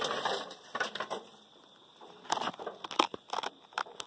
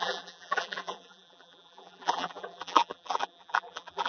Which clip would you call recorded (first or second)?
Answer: first